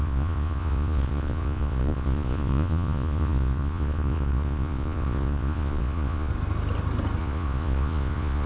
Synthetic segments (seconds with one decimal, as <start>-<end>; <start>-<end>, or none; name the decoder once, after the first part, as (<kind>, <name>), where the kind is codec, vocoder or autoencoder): 0.0-6.3 (vocoder, Vocos); 7.2-8.5